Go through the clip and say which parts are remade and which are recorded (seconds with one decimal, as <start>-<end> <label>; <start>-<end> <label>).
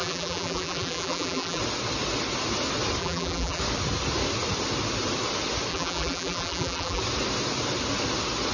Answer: 0.0-1.6 remade; 1.6-3.0 recorded; 3.0-3.6 remade; 3.6-5.7 recorded; 5.7-7.0 remade; 7.0-8.5 recorded